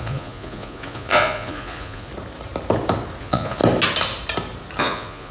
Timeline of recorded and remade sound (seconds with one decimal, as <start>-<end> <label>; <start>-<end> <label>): 0.0-2.1 remade; 2.1-3.2 recorded; 3.2-3.6 remade; 3.6-4.8 recorded; 4.8-5.3 remade